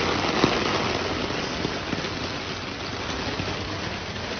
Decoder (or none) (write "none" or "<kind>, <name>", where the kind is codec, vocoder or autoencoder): none